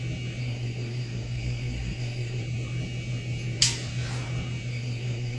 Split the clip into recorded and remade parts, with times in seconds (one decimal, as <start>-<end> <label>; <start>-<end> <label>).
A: 0.0-0.4 recorded; 0.4-2.4 remade; 2.4-4.7 recorded; 4.7-5.4 remade